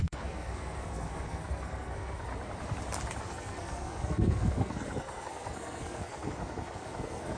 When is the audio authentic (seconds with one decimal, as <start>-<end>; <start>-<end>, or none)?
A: 2.3-3.2